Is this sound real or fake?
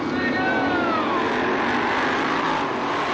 real